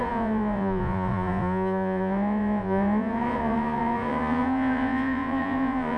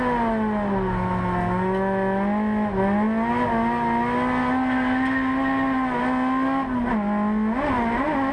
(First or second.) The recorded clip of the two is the second